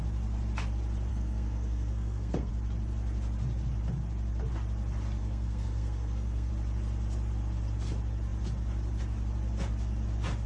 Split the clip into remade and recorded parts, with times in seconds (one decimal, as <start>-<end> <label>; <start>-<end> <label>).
0.0-1.1 recorded; 1.1-2.5 remade; 2.5-5.2 recorded; 5.2-6.5 remade; 6.5-10.5 recorded